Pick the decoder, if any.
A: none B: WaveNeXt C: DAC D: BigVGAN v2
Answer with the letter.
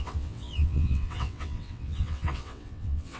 B